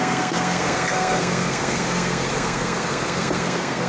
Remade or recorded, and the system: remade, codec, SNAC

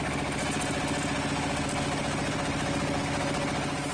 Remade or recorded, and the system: recorded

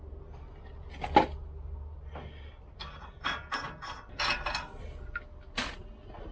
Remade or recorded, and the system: recorded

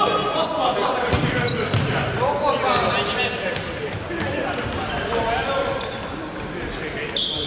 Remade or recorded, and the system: recorded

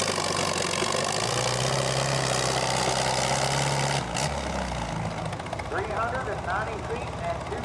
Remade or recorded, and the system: recorded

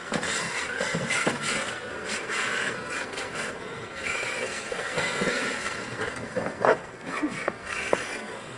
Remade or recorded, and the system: remade, codec, SNAC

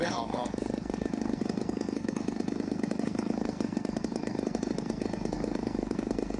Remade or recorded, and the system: remade, codec, SNAC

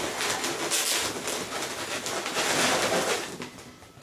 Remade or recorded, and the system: recorded